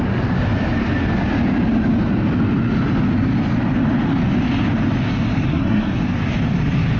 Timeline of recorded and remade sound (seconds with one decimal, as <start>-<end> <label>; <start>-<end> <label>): 0.0-5.5 recorded; 5.5-6.0 remade; 6.0-7.0 recorded